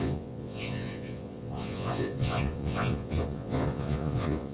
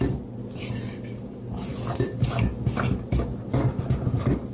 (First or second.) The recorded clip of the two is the second